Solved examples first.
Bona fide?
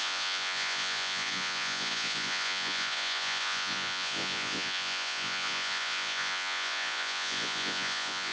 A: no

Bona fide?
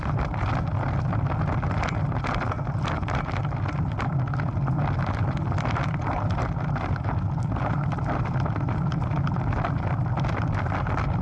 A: yes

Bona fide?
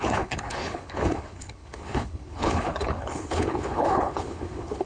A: no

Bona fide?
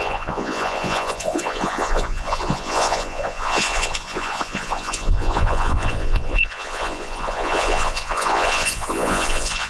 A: no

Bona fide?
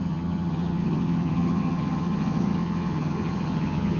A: no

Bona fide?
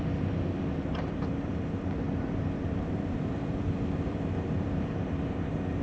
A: no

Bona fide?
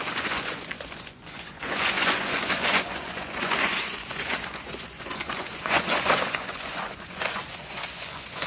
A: no